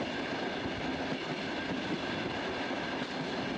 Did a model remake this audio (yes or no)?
no